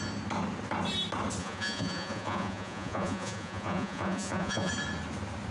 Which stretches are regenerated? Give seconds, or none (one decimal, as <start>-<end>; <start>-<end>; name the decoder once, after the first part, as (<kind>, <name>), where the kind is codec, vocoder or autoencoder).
1.4-4.7 (vocoder, Vocos)